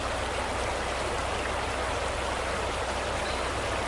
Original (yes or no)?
yes